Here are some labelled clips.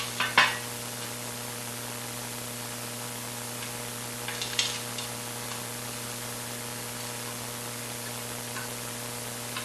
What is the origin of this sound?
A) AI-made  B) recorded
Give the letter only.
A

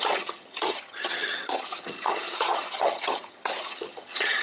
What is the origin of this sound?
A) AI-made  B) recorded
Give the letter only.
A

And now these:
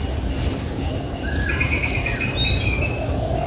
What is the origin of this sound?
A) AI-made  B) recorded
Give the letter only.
B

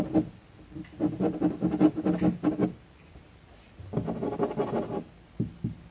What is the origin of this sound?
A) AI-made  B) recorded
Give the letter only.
B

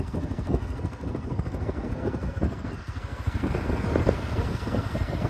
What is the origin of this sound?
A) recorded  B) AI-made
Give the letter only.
B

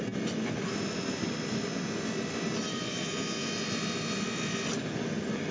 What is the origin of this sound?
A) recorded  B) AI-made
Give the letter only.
A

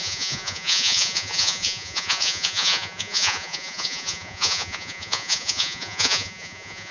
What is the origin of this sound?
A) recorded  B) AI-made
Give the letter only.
B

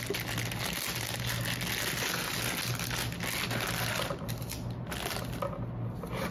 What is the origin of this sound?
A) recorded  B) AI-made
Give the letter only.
A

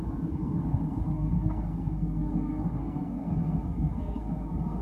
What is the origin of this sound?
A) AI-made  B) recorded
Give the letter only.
A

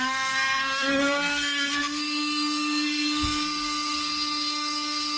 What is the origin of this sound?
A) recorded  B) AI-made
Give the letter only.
B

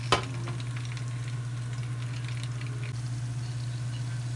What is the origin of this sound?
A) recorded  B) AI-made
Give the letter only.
A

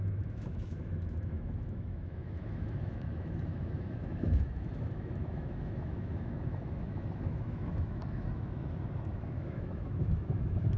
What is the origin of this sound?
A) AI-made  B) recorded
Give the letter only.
A